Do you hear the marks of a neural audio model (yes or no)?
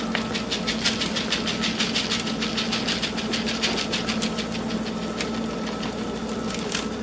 no